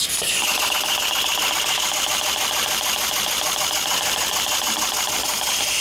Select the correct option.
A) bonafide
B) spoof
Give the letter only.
A